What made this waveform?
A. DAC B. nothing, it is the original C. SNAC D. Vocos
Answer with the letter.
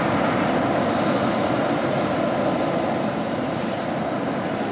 B